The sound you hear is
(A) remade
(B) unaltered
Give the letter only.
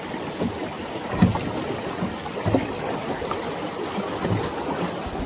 B